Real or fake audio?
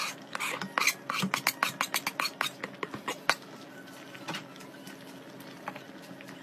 real